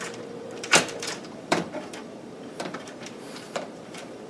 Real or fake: fake